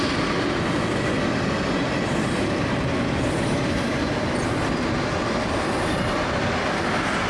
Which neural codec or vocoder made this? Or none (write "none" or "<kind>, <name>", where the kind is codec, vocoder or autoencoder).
none